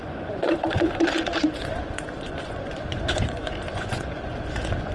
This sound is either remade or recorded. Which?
remade